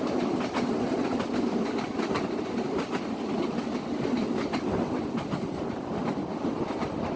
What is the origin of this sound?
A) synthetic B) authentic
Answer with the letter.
B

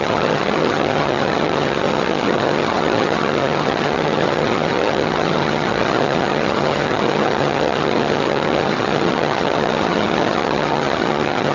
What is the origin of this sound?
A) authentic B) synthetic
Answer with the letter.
B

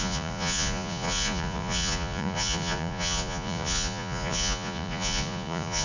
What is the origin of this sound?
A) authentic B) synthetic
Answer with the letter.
B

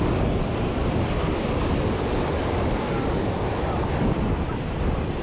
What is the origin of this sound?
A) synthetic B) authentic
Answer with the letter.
A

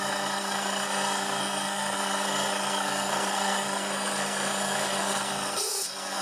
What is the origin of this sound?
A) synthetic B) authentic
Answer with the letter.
A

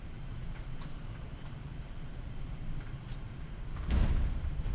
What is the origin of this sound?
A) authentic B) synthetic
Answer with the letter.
B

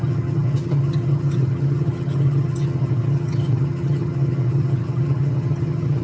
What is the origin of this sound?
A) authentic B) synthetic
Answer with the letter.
B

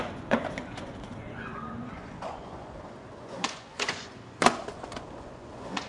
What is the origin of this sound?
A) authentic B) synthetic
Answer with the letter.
B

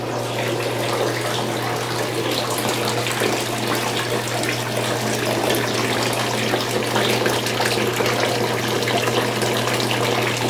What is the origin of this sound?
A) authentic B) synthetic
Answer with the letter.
A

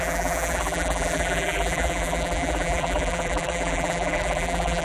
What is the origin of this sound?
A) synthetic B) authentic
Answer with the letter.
A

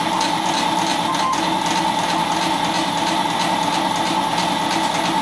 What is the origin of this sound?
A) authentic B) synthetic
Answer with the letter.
A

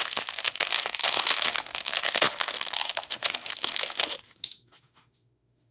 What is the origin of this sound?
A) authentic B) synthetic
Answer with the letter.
B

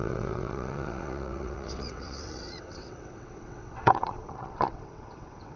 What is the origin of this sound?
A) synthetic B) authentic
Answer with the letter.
A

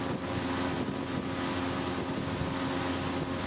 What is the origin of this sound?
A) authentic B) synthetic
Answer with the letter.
A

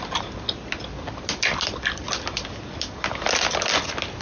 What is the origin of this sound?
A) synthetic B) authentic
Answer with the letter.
B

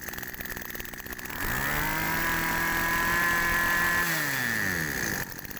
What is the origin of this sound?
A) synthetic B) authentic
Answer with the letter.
B